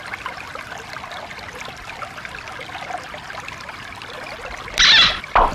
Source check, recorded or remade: recorded